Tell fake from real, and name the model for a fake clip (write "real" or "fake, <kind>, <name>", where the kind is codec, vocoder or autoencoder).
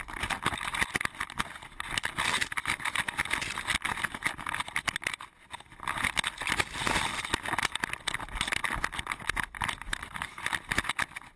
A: real